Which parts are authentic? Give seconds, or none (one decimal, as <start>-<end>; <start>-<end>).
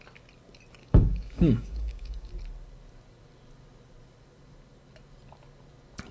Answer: 0.0-0.8; 2.3-6.1